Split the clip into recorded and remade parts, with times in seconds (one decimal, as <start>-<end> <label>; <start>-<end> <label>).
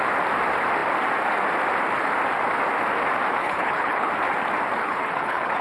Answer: 0.0-3.4 recorded; 3.4-4.1 remade; 4.1-4.8 recorded; 4.8-5.6 remade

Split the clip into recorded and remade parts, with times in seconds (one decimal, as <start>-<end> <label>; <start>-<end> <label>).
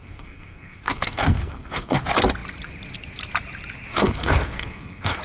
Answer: 0.0-2.0 remade; 2.0-3.9 recorded; 3.9-5.2 remade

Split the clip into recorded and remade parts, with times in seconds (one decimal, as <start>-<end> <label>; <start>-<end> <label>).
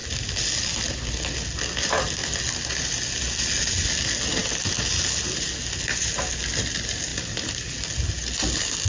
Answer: 0.0-8.9 recorded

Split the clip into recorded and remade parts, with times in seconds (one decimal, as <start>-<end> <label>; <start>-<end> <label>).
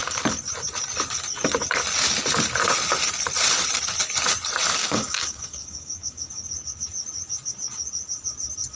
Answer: 0.0-4.8 recorded; 4.8-6.5 remade; 6.5-8.7 recorded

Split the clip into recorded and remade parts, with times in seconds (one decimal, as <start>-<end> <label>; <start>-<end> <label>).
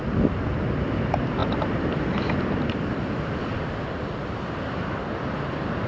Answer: 0.0-5.9 recorded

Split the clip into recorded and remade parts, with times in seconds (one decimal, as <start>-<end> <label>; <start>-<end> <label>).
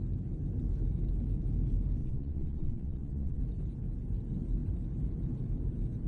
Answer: 0.0-2.0 recorded; 2.0-3.4 remade; 3.4-6.1 recorded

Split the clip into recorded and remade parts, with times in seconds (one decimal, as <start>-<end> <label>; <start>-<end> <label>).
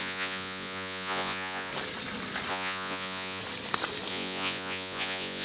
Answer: 0.0-1.7 remade; 1.7-2.5 recorded; 2.5-3.4 remade; 3.4-4.1 recorded; 4.1-5.4 remade